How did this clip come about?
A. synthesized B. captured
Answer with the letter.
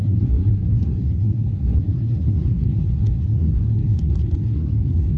A